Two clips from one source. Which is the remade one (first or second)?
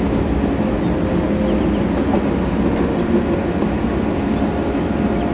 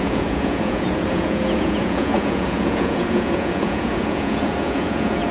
second